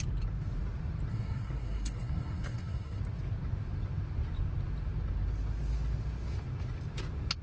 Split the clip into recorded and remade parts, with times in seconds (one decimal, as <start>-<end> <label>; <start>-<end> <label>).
0.0-1.1 recorded; 1.1-3.0 remade; 3.0-7.4 recorded